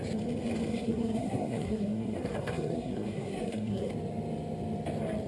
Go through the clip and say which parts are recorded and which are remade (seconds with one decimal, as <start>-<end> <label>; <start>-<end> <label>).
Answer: 0.0-0.7 recorded; 0.7-3.9 remade; 3.9-5.3 recorded